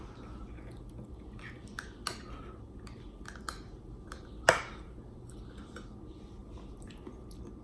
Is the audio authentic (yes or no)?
yes